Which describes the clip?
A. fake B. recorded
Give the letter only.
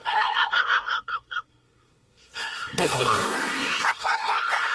A